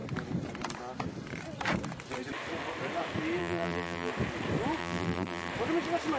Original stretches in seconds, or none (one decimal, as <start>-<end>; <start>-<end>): 0.0-3.4; 4.1-4.8; 5.5-6.2